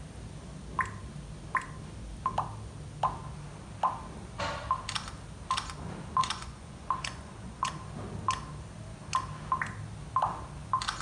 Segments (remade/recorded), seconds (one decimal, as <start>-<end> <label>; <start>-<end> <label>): 0.0-6.2 recorded; 6.2-7.7 remade; 7.7-11.0 recorded